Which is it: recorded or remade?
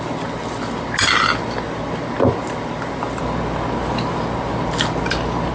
recorded